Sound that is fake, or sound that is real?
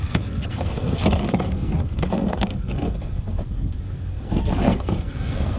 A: fake